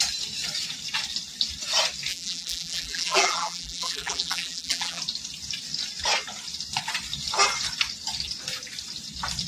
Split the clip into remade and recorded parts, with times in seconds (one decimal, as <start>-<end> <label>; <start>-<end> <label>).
0.0-2.1 recorded; 2.1-5.0 remade; 5.0-9.5 recorded